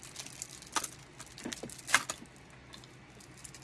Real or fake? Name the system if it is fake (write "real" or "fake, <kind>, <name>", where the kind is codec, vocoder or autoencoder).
real